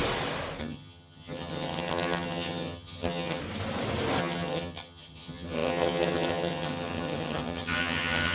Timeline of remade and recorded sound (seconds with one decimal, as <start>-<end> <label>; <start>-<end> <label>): 0.0-0.6 recorded; 0.6-3.4 remade; 3.4-4.2 recorded; 4.2-8.3 remade